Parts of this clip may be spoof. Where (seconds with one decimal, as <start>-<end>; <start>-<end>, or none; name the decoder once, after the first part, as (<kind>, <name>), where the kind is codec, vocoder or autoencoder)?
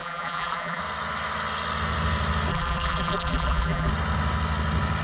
0.0-0.8 (vocoder, BigVGAN v2); 2.5-3.9